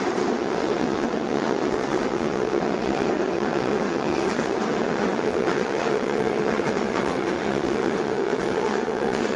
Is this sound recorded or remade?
remade